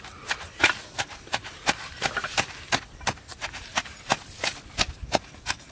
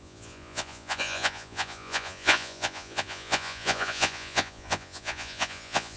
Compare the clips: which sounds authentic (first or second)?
first